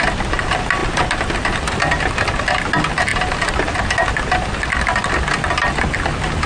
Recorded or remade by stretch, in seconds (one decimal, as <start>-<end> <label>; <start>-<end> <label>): 0.0-6.5 recorded